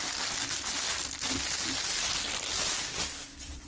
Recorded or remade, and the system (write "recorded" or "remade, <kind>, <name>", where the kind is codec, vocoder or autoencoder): recorded